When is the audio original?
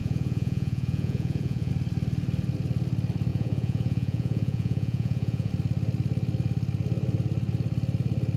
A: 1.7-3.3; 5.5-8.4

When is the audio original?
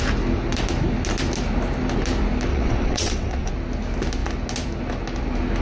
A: 0.0-2.5; 3.5-5.6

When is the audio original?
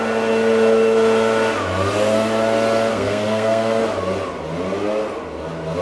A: 0.0-2.9; 3.8-5.8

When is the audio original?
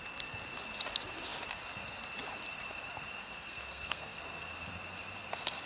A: 0.0-3.2; 4.2-5.7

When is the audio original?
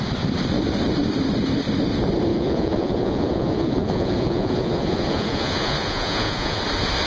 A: 0.0-2.3; 6.6-7.1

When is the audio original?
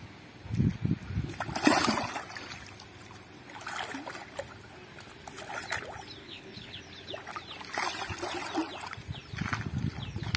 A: 0.0-6.2; 6.8-10.4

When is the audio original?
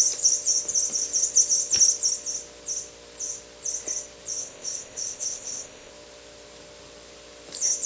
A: 0.0-4.4; 5.9-7.9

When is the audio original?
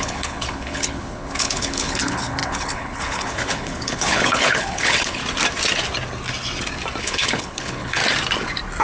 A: 5.2-7.0; 8.0-8.8